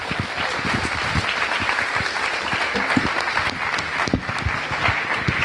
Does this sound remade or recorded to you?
recorded